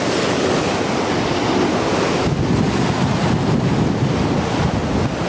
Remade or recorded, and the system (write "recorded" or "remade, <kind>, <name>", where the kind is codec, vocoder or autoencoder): recorded